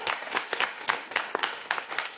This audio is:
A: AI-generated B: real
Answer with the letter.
A